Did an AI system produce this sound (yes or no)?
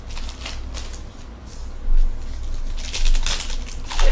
no